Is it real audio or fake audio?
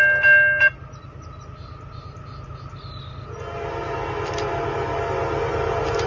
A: real